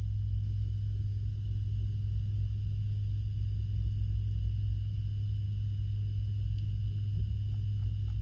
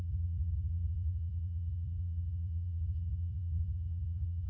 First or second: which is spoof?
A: second